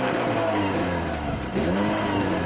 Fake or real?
real